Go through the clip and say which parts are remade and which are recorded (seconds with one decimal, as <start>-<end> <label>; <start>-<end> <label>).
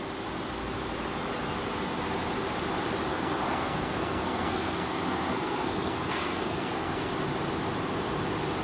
0.0-3.1 recorded; 3.1-7.1 remade; 7.1-8.6 recorded